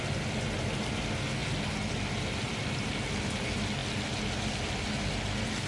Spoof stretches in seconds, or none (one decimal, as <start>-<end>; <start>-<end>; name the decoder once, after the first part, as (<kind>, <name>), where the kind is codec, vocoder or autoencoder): none